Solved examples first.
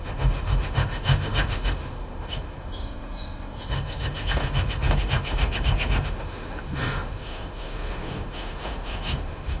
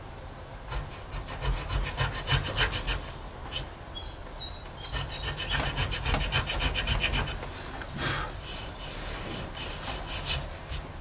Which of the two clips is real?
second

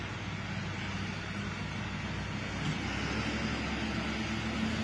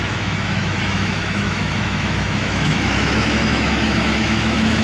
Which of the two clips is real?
first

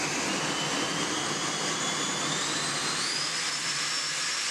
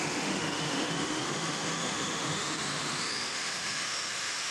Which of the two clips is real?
first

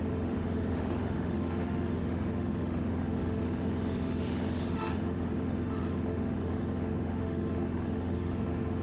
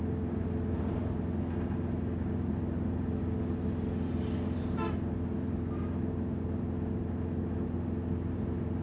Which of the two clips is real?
second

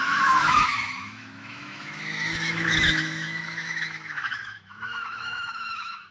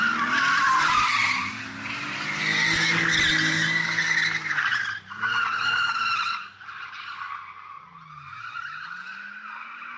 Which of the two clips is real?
second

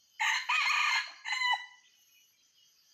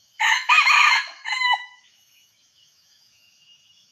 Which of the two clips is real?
first